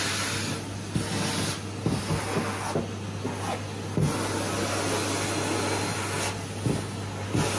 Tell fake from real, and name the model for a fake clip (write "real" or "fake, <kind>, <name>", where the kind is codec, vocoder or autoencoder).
real